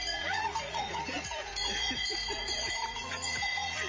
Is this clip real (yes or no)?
no